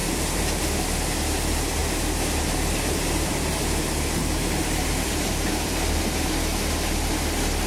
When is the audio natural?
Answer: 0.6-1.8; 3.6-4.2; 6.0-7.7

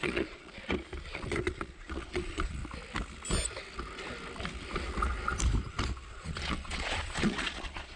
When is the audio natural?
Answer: 0.6-1.1; 2.6-6.1

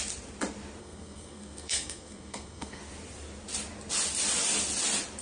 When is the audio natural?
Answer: 0.0-0.8; 2.8-5.2

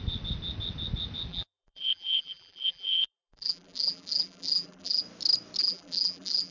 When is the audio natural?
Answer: 0.0-1.3; 5.0-5.6